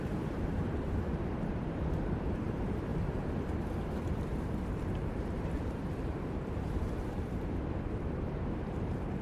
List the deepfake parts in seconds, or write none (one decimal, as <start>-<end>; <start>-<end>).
0.0-9.2